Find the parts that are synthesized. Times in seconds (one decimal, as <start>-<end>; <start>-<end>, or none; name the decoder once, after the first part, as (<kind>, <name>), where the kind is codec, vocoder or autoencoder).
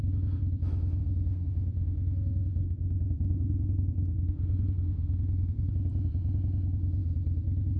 1.0-5.7 (codec, SNAC)